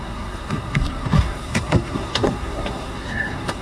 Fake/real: fake